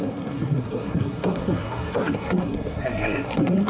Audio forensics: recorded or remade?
remade